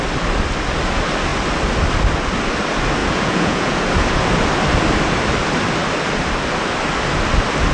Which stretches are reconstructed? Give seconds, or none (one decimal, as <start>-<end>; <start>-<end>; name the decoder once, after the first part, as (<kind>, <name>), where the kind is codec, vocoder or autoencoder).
3.0-3.8 (vocoder, Vocos)